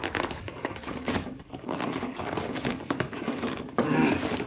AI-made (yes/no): yes